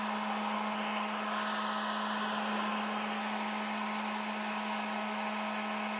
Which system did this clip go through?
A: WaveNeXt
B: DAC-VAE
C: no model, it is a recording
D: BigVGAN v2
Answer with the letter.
C